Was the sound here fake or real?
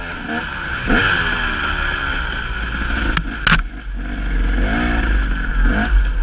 real